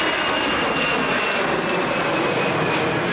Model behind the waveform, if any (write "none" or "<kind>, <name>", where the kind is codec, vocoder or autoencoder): none